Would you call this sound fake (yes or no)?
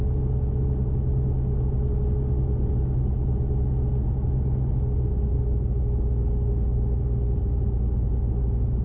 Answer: no